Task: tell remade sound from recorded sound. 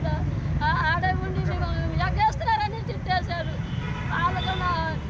recorded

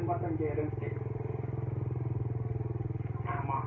recorded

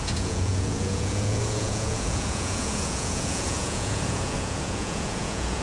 remade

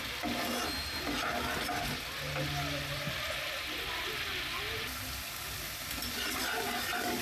recorded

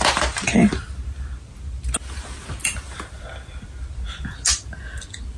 recorded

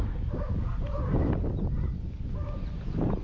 recorded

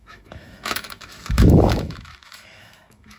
remade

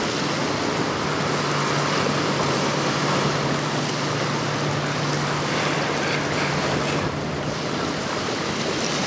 recorded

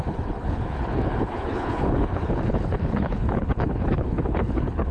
remade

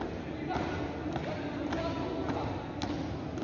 recorded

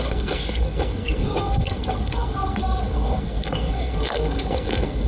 remade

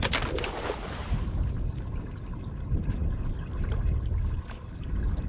recorded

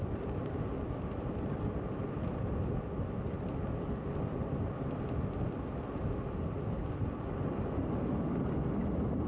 recorded